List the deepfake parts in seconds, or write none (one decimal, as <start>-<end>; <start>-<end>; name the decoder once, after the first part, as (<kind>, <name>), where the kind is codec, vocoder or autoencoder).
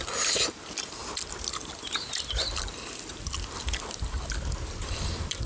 none